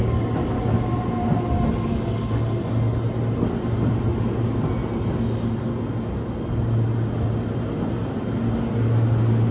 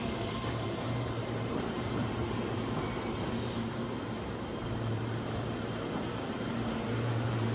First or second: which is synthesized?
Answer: second